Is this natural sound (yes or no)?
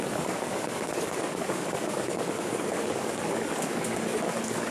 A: no